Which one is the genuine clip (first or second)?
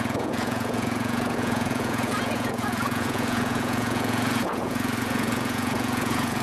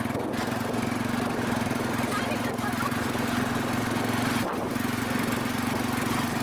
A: second